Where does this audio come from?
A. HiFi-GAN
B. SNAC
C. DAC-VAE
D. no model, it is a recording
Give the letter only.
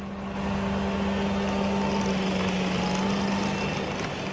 D